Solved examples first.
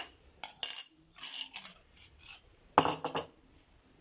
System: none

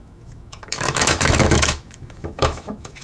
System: autoencoder, DAC-VAE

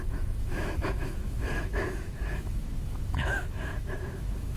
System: autoencoder, DAC-VAE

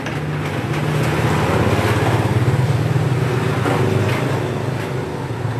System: none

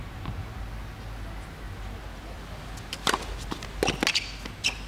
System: none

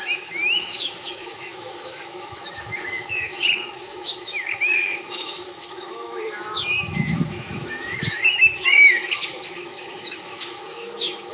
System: autoencoder, DAC-VAE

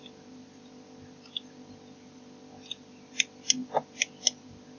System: none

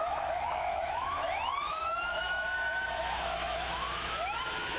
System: autoencoder, DAC-VAE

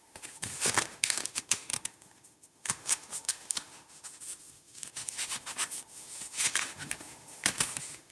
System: autoencoder, DAC-VAE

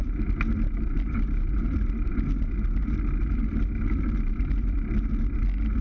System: none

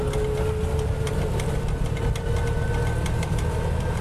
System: none